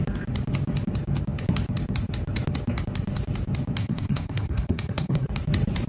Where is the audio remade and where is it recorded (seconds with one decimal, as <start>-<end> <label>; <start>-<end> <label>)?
0.0-3.8 recorded; 3.8-5.3 remade; 5.3-5.9 recorded